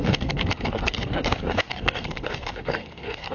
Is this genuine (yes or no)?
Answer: no